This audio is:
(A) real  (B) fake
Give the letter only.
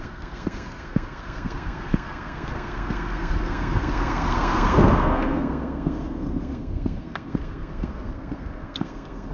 B